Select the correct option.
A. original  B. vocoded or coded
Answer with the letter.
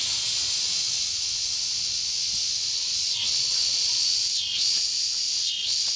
B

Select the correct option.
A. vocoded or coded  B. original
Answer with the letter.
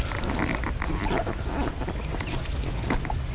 B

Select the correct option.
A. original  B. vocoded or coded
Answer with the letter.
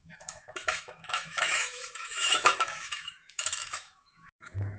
B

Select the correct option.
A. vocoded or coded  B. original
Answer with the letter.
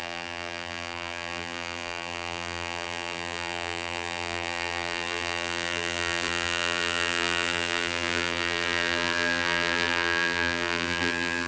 A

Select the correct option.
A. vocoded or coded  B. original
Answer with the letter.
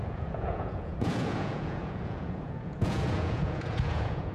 A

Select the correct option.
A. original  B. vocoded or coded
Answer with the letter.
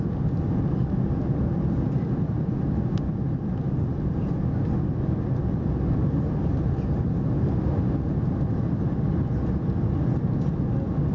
A